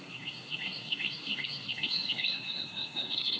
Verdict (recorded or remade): remade